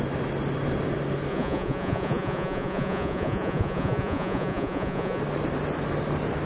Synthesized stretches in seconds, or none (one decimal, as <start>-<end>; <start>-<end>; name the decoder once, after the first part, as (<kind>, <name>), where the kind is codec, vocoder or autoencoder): 1.3-5.2 (vocoder, Vocos)